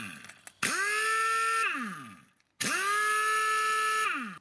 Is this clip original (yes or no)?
yes